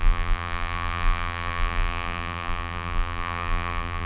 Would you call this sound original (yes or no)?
no